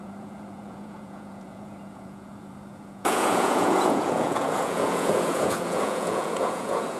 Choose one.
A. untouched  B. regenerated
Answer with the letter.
B